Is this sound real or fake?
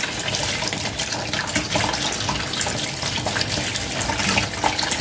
real